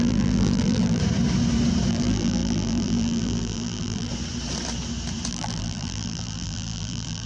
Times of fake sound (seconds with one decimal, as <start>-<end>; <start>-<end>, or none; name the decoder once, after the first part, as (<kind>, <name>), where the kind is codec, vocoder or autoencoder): 0.0-1.0 (vocoder, BigVGAN v2); 1.9-4.1; 5.3-7.3